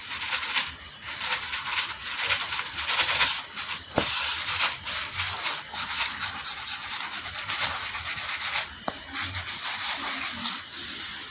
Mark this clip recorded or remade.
recorded